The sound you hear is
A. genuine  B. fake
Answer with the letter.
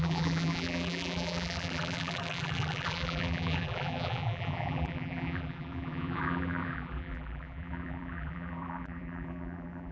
B